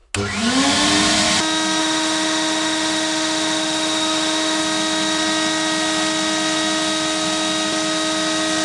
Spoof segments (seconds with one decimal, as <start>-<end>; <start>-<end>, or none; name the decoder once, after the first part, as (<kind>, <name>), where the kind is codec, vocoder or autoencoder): 1.8-4.6 (autoencoder, DAC-VAE)